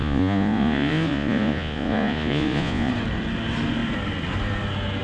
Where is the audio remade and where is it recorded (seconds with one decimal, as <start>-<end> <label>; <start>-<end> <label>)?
0.0-2.9 remade; 2.9-5.0 recorded